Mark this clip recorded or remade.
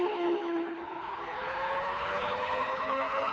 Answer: remade